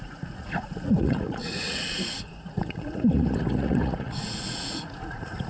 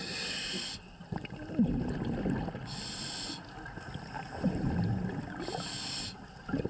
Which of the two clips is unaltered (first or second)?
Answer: second